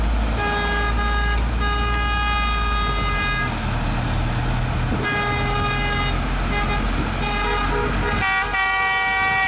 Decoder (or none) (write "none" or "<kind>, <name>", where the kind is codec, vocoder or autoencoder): none